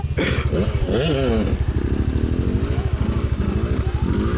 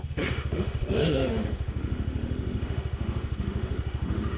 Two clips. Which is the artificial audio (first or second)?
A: second